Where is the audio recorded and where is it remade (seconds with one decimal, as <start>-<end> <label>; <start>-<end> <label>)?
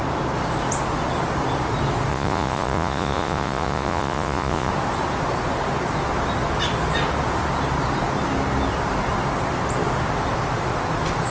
0.0-2.1 recorded; 2.1-4.7 remade; 4.7-11.3 recorded